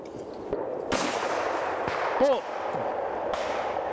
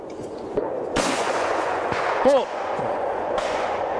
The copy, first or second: second